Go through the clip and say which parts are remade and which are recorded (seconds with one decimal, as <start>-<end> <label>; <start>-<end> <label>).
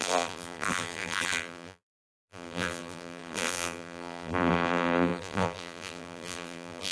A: 0.0-6.9 remade